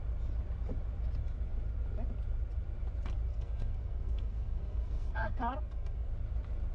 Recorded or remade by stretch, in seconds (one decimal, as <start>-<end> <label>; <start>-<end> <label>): 0.0-3.3 recorded; 3.3-6.1 remade; 6.1-6.7 recorded